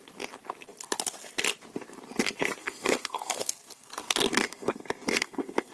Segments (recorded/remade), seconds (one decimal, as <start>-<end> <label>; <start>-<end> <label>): 0.0-2.6 recorded; 2.6-5.7 remade